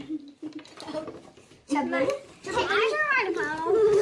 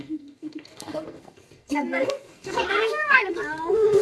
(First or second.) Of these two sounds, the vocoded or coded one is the second